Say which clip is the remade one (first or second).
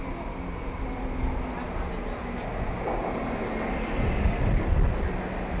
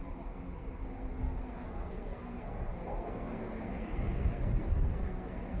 second